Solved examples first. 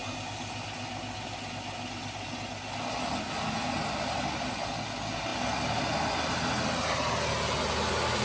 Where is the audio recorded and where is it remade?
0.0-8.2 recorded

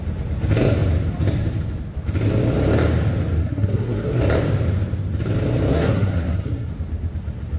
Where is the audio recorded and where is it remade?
0.0-3.4 recorded; 3.4-4.2 remade; 4.2-5.7 recorded; 5.7-6.7 remade; 6.7-7.6 recorded

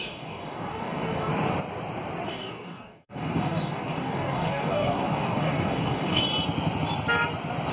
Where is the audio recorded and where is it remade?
0.0-1.3 remade; 1.3-2.3 recorded; 2.3-6.2 remade; 6.2-7.7 recorded

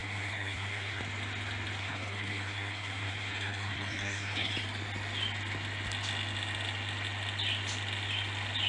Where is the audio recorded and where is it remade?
0.0-1.0 remade; 1.0-1.8 recorded; 1.8-4.5 remade; 4.5-8.7 recorded

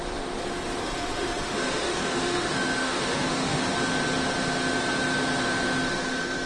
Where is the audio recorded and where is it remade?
0.0-0.8 recorded; 0.8-3.7 remade; 3.7-6.5 recorded